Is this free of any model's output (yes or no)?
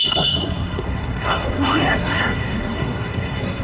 no